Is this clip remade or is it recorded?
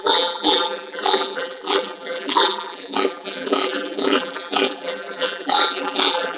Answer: remade